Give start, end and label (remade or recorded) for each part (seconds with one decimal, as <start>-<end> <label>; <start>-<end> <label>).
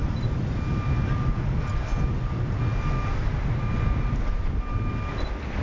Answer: 0.0-5.6 recorded